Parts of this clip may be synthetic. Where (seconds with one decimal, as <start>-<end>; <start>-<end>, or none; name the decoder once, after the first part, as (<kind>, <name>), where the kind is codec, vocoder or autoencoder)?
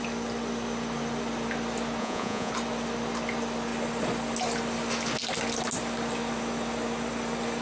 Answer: 2.0-2.5 (vocoder, Vocos)